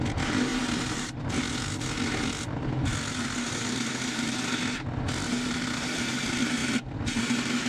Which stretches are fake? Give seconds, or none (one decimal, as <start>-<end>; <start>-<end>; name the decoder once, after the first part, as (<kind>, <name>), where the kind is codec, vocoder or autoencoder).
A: none